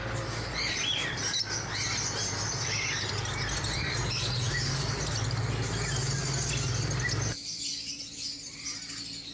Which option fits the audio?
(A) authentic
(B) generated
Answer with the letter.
A